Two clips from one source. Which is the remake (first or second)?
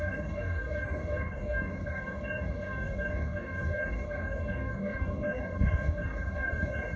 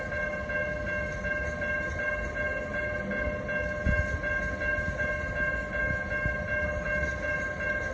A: first